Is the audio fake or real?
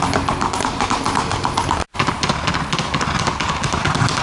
real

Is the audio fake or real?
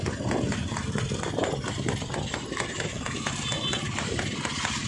real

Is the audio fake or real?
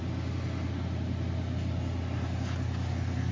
real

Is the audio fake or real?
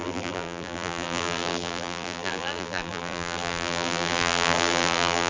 fake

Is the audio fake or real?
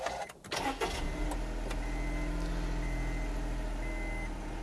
real